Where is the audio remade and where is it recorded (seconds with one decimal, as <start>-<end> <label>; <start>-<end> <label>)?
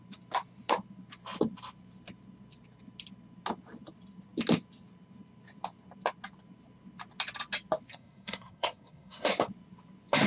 0.0-7.9 recorded; 7.9-9.3 remade; 9.3-10.3 recorded